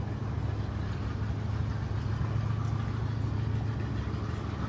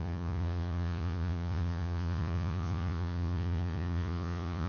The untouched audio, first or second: first